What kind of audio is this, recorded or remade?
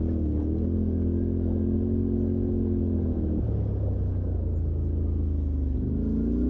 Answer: recorded